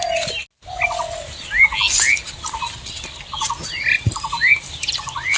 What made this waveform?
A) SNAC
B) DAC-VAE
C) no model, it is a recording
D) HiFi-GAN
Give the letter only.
C